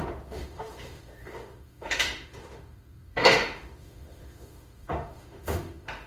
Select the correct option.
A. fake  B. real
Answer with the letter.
A